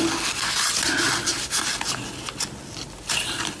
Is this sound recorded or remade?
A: recorded